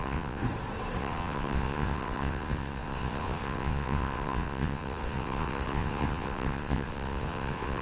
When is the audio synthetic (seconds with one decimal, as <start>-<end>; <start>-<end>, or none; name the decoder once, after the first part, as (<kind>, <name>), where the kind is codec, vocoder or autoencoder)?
0.0-0.4 (vocoder, WaveNeXt); 1.0-7.8

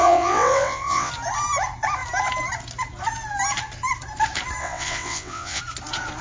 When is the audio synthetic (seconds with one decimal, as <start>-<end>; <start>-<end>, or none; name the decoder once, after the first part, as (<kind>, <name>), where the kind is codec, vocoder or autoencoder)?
0.0-1.1 (vocoder, WaveNeXt); 4.6-5.6

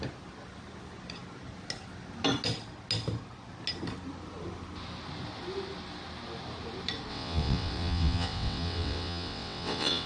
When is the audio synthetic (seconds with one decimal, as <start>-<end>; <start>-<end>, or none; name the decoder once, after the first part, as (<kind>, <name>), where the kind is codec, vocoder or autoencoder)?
7.1-10.1 (vocoder, WaveNeXt)

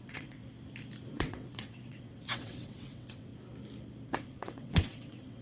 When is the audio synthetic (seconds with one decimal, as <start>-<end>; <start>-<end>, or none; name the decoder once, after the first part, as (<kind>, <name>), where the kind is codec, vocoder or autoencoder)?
0.0-0.4 (vocoder, WaveNeXt); 1.1-3.3; 4.1-5.4

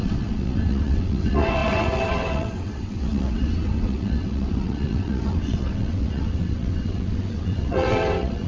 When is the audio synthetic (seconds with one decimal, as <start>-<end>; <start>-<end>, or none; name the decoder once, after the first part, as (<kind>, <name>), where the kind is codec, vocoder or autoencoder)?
0.0-8.5 (vocoder, WaveNeXt)